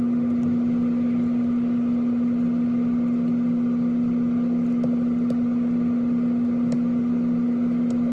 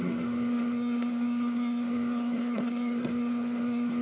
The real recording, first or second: first